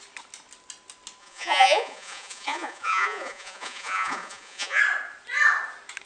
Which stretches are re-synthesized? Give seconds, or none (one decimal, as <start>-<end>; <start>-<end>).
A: 1.2-4.8